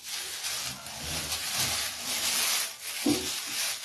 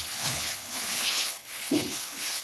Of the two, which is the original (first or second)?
first